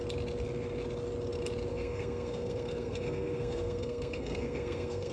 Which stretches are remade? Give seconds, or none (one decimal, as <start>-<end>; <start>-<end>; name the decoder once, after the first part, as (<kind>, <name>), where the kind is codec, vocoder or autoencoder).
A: 1.7-5.1 (codec, SNAC)